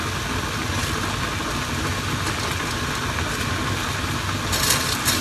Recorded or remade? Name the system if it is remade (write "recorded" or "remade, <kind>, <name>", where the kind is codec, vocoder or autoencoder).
recorded